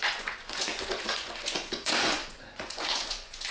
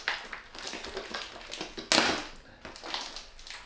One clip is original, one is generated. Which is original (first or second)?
second